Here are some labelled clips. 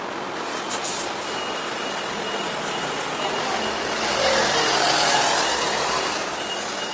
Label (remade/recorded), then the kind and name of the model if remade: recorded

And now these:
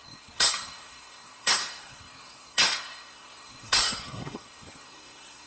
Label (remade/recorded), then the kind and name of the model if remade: remade, codec, SNAC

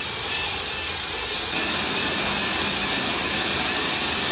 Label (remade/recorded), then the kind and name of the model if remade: recorded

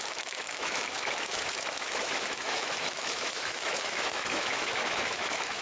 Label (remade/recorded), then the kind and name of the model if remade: remade, autoencoder, DAC-VAE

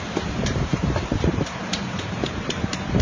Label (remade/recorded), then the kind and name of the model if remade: remade, vocoder, BigVGAN v2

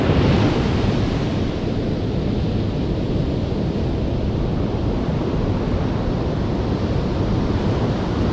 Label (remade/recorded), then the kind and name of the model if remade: recorded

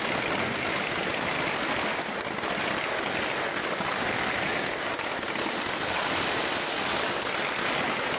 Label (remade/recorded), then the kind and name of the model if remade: recorded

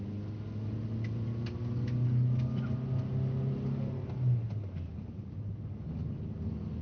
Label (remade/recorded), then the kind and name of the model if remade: recorded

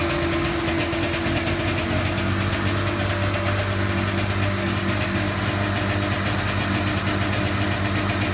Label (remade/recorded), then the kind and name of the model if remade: recorded